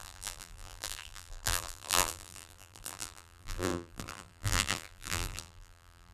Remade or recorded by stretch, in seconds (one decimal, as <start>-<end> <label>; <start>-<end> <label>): 0.0-6.1 remade

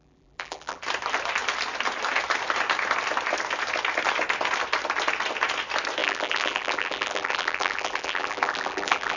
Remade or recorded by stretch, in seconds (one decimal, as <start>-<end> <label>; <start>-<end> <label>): 0.0-0.8 remade; 0.8-6.0 recorded; 6.0-9.2 remade